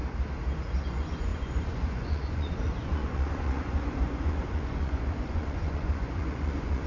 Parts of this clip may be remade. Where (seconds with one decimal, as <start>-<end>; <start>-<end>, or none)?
0.9-6.9